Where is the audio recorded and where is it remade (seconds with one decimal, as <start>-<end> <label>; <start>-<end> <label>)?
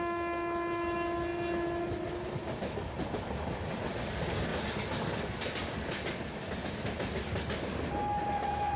0.0-8.8 recorded